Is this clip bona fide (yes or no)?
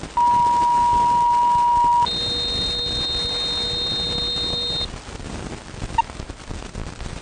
yes